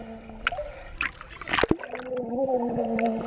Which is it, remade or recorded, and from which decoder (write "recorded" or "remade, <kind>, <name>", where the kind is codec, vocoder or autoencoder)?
recorded